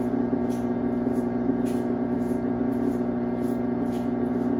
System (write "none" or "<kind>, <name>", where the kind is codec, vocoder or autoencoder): none